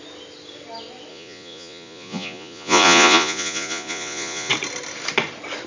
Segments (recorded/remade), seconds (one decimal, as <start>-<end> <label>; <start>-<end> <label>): 0.0-1.1 recorded; 1.1-4.5 remade; 4.5-5.7 recorded